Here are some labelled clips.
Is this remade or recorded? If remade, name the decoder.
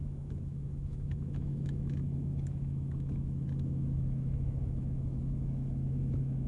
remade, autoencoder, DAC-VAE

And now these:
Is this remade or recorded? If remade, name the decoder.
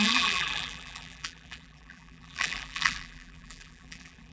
remade, vocoder, BigVGAN v2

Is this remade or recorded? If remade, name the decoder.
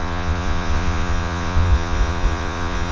remade, vocoder, Vocos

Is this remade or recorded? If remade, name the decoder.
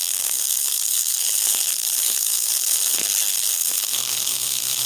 remade, codec, SNAC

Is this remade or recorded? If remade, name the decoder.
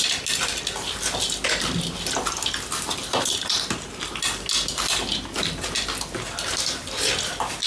recorded